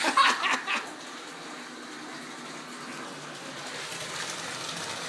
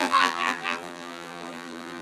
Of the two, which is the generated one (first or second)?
second